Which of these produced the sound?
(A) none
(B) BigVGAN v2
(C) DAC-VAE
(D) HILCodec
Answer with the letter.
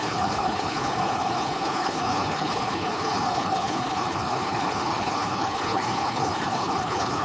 D